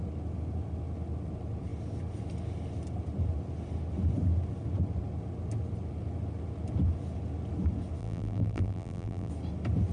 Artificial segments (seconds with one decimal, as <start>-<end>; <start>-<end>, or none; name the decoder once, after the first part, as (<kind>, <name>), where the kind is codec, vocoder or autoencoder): 8.0-9.3 (vocoder, BigVGAN v2)